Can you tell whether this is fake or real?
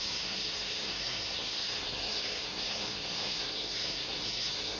fake